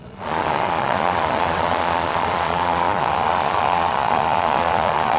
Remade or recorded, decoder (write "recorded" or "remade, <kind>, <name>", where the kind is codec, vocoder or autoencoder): remade, vocoder, Vocos